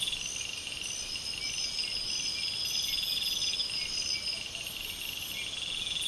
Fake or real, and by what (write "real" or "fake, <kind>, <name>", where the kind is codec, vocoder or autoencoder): real